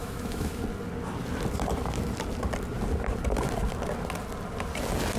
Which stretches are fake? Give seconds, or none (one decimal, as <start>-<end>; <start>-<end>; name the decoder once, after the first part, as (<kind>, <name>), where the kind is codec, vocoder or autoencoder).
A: 0.0-0.6 (autoencoder, DAC-VAE)